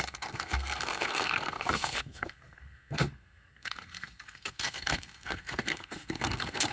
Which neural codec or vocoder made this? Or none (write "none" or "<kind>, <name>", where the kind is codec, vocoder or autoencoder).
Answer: codec, SNAC